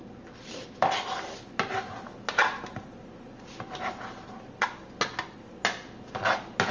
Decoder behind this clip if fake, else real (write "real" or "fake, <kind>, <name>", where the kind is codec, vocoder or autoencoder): real